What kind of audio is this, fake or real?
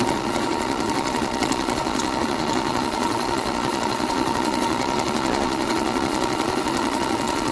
fake